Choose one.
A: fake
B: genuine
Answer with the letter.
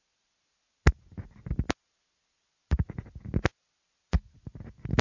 B